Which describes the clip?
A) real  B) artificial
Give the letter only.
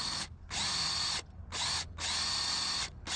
A